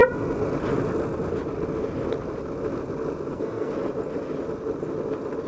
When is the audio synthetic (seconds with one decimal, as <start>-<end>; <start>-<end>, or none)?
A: 3.3-3.7